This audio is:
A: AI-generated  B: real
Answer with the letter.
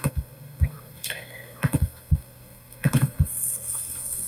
A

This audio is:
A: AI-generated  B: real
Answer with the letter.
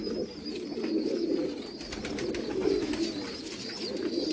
B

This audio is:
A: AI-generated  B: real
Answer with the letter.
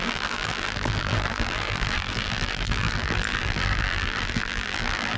A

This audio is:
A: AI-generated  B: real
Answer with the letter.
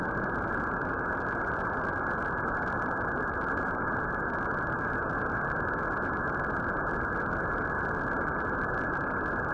B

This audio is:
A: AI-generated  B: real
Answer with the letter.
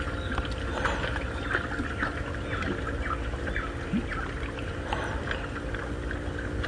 B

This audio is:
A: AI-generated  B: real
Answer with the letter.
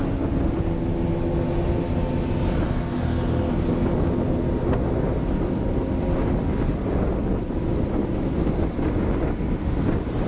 B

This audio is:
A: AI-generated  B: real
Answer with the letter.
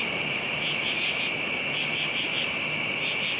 B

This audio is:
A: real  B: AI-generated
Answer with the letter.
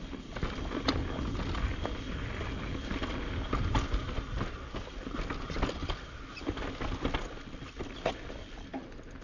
A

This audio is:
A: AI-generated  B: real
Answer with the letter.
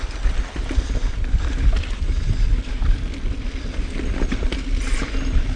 A